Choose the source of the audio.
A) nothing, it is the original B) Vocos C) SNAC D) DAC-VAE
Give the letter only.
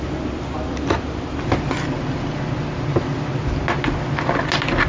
A